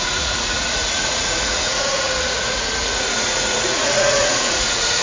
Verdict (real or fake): fake